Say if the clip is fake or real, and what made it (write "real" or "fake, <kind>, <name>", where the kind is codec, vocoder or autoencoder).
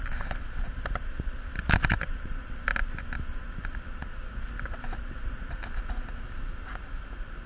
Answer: real